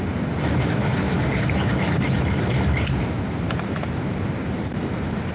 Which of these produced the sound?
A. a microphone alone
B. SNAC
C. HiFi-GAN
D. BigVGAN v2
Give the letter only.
D